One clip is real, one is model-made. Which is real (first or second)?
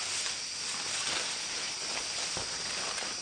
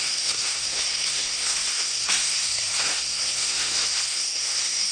first